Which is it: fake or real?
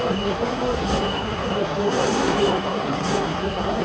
fake